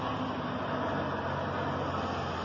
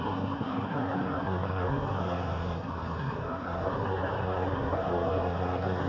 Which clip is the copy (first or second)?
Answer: second